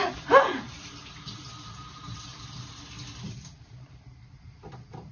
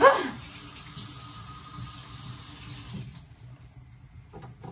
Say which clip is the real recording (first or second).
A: second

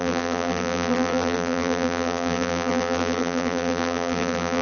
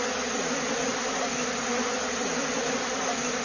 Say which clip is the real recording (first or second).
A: second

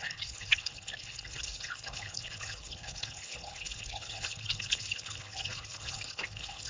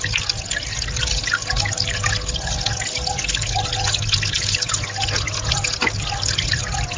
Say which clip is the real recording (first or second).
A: second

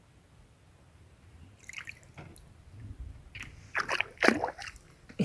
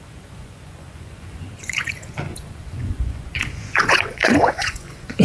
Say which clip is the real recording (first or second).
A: first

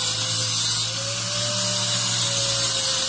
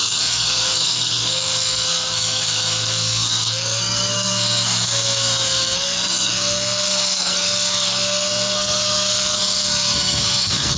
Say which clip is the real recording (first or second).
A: first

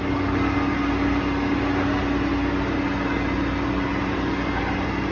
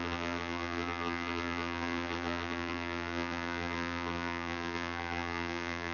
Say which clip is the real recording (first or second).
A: first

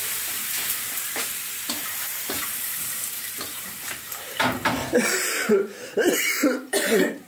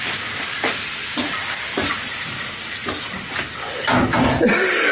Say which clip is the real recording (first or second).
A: second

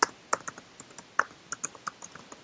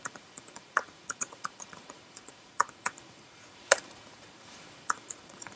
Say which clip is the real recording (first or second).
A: first